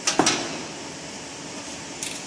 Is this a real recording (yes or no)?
yes